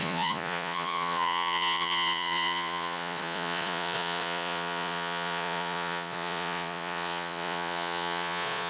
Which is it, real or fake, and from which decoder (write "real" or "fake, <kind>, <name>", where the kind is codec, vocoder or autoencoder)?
fake, vocoder, Vocos